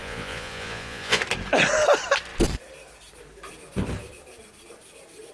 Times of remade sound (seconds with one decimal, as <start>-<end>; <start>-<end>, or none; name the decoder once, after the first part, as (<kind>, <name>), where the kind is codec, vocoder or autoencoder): 0.0-1.2 (vocoder, Vocos)